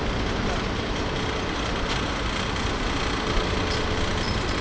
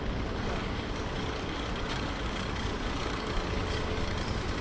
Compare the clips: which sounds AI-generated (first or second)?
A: second